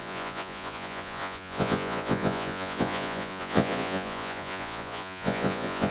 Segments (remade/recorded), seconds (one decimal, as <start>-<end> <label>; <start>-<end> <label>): 0.0-5.9 remade